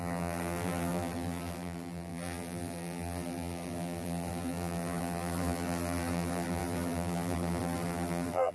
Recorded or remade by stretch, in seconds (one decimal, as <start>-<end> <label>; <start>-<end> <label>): 0.0-8.5 remade